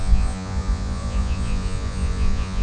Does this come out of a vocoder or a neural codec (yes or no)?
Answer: yes